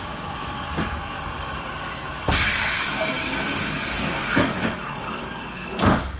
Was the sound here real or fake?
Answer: fake